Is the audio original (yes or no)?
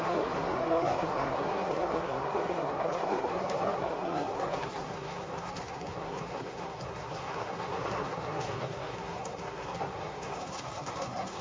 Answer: no